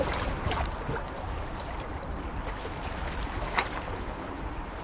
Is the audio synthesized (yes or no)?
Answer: yes